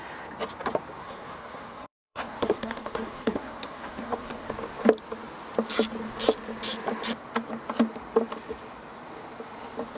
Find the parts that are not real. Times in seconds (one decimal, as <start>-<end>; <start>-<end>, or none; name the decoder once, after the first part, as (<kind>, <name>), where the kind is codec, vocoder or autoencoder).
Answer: 1.0-4.5 (codec, SNAC)